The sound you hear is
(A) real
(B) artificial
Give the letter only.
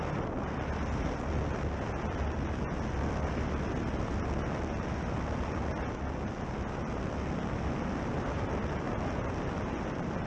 A